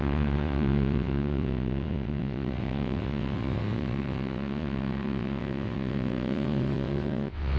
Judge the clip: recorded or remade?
remade